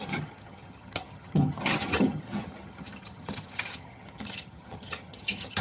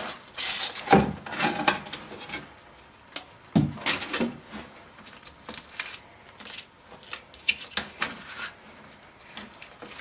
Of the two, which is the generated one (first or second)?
first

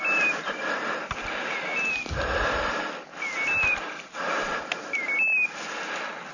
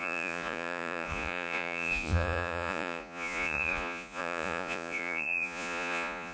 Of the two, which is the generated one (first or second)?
second